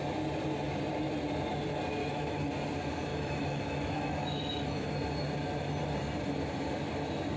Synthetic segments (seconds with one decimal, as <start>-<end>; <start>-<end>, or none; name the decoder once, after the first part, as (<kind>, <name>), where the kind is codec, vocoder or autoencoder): 2.0-2.5 (autoencoder, DAC-VAE); 3.1-4.9